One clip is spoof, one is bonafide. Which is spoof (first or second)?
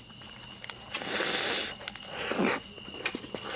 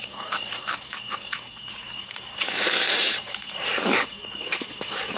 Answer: second